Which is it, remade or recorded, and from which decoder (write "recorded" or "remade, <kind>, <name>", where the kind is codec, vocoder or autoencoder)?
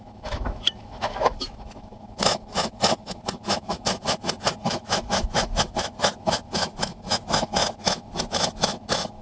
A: remade, autoencoder, DAC-VAE